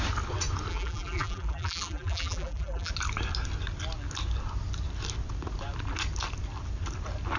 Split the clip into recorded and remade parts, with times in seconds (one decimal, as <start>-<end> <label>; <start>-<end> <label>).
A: 0.0-0.7 recorded; 0.7-2.9 remade; 2.9-7.4 recorded